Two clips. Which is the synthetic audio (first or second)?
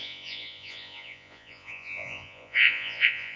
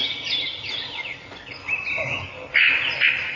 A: first